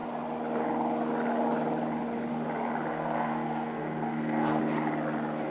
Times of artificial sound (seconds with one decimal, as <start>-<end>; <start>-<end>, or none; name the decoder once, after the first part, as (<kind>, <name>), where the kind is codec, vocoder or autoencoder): 2.9-4.6 (codec, SNAC)